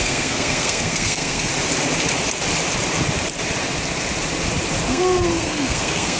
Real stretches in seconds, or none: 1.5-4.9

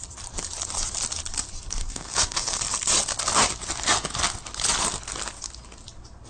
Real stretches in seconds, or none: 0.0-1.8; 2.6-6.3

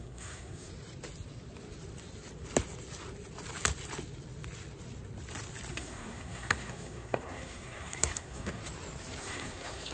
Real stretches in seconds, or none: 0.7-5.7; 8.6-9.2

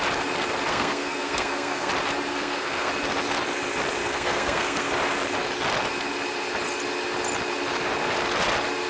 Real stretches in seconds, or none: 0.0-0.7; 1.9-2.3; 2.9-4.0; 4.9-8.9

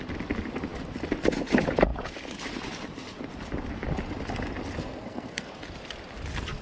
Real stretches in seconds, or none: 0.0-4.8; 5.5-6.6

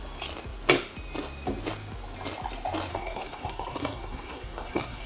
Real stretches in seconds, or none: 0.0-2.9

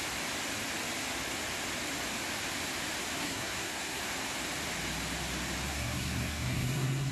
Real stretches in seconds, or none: 0.0-3.2; 4.0-5.7